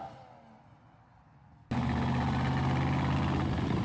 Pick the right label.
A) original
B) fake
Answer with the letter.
A